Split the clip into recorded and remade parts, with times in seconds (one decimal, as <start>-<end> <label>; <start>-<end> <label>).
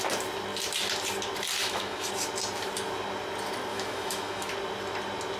0.0-1.6 recorded; 1.6-2.1 remade; 2.1-3.7 recorded; 3.7-4.5 remade; 4.5-5.4 recorded